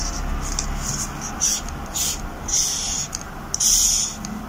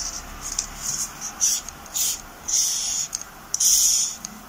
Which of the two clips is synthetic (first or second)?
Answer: second